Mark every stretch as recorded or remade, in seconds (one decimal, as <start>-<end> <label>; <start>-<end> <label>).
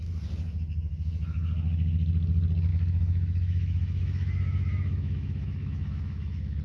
0.0-2.7 recorded; 2.7-6.6 remade